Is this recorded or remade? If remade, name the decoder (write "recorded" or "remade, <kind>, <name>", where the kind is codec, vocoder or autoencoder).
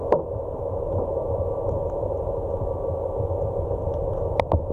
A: recorded